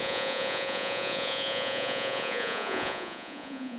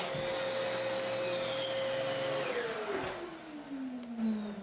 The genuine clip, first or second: second